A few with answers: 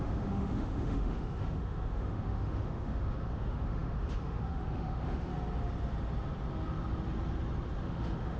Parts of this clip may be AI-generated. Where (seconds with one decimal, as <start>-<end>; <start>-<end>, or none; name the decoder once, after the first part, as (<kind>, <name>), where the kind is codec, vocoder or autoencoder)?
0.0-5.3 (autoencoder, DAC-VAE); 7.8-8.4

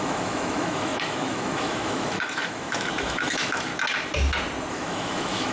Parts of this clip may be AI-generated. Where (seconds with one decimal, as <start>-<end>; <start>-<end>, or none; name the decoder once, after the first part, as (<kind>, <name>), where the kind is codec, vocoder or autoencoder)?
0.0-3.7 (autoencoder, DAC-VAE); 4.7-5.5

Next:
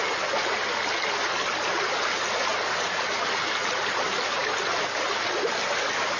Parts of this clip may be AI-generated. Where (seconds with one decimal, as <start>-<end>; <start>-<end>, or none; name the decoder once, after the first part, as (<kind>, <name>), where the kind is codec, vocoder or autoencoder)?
none

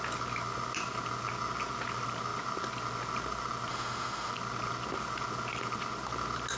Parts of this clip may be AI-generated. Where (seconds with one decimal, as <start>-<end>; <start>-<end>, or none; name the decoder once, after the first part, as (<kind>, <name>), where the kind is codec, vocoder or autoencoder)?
3.7-4.3 (autoencoder, DAC-VAE)